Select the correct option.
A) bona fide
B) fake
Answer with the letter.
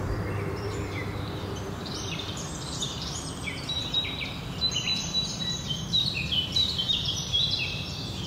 B